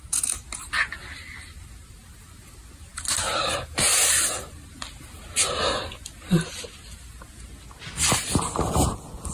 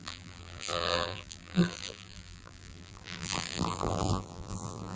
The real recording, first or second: first